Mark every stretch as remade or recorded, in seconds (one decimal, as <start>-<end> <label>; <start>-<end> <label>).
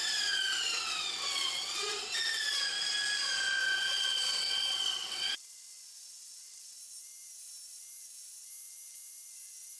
0.0-2.6 remade; 2.6-3.6 recorded; 3.6-6.8 remade; 6.8-9.8 recorded